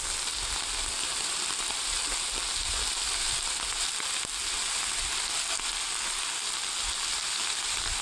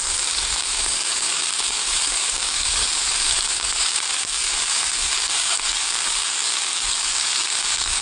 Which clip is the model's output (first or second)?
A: second